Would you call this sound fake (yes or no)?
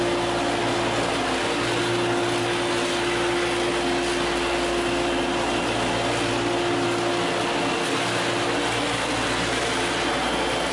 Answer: no